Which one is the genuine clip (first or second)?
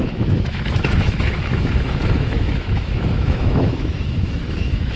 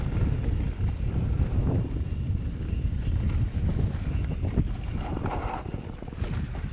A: second